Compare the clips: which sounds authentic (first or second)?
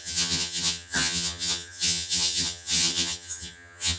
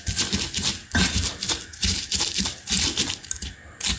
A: second